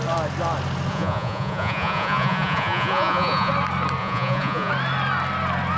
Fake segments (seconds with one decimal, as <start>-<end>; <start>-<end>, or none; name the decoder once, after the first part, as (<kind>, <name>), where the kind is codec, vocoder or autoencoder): 0.9-3.5 (vocoder, Vocos); 4.0-4.7